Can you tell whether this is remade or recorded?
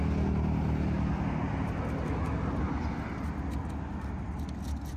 recorded